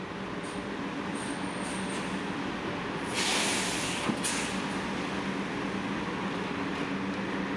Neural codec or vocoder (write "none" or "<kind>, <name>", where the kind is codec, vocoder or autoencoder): none